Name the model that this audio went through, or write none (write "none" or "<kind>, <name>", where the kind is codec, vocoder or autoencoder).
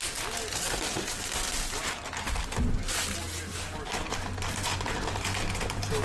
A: none